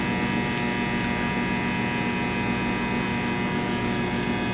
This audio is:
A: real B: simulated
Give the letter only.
A